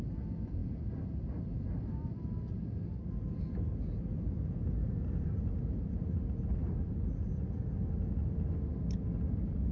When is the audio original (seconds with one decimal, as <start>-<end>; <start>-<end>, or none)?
0.0-9.7